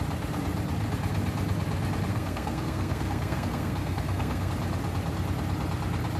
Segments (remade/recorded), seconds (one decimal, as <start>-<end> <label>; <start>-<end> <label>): 0.0-2.1 recorded; 2.1-4.5 remade; 4.5-6.2 recorded